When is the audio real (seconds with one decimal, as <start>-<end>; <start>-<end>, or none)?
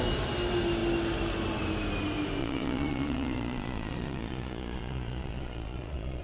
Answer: 0.0-2.4